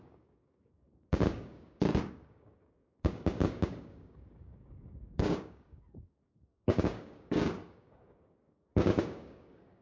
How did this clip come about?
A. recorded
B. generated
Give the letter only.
B